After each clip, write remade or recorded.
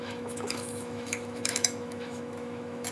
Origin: remade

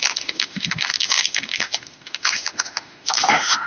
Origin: remade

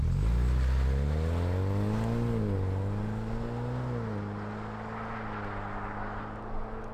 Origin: recorded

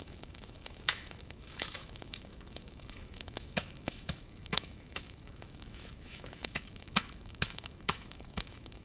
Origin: remade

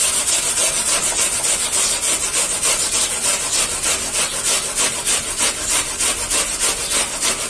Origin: recorded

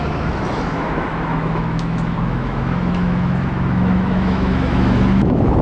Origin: remade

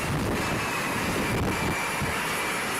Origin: recorded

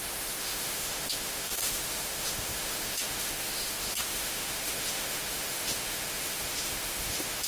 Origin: remade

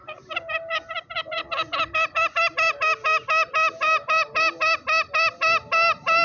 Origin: recorded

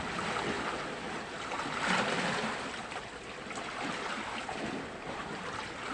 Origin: recorded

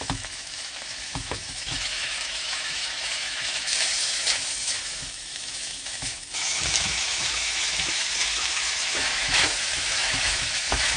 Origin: remade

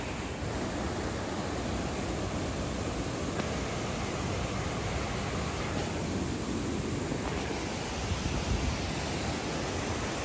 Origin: recorded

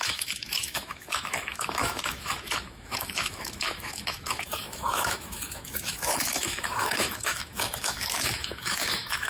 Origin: remade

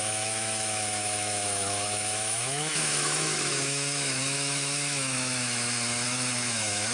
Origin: remade